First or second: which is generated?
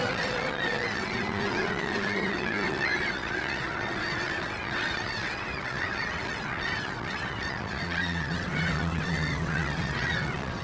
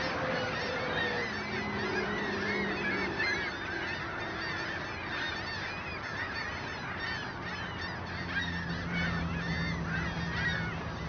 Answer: first